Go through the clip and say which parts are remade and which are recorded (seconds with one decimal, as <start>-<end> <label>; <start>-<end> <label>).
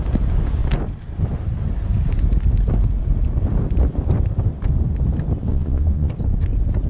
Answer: 0.0-5.5 recorded; 5.5-6.1 remade; 6.1-6.9 recorded